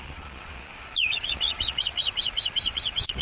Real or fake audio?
fake